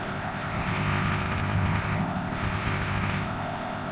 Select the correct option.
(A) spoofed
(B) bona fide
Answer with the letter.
A